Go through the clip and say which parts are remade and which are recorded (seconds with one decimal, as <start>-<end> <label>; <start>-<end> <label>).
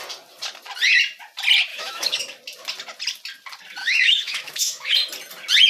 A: 0.0-1.7 recorded; 1.7-2.2 remade; 2.2-3.8 recorded; 3.8-4.9 remade; 4.9-5.7 recorded